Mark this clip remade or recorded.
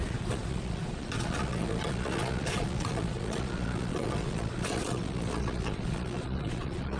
remade